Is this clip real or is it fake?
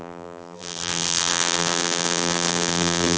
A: fake